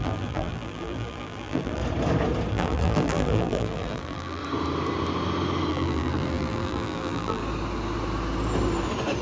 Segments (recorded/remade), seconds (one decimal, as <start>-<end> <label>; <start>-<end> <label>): 0.0-1.8 remade; 1.8-2.5 recorded; 2.5-4.4 remade; 4.4-5.7 recorded; 5.7-7.4 remade; 7.4-9.2 recorded